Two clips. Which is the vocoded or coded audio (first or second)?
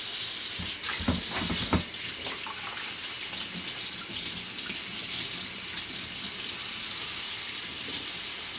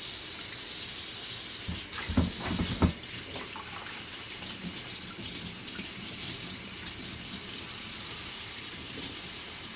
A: second